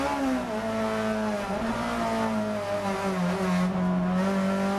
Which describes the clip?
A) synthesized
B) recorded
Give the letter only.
B